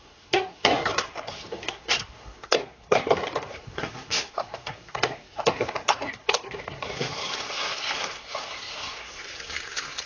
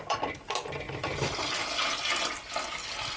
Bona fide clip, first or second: second